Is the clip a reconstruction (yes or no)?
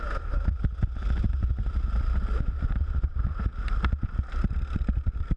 no